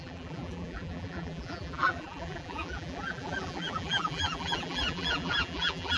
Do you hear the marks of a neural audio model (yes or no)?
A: yes